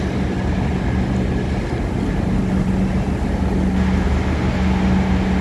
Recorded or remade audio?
recorded